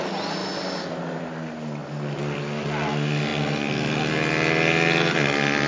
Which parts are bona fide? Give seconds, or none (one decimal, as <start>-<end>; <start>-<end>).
0.0-5.7